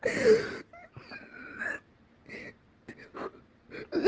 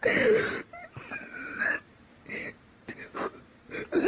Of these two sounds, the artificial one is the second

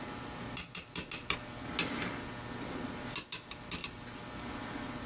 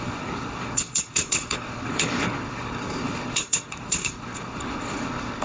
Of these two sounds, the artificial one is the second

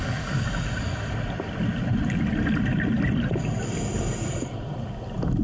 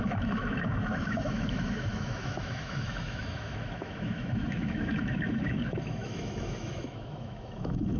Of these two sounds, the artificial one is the second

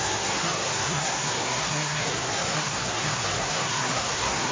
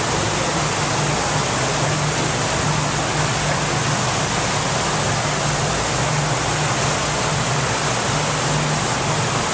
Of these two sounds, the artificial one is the first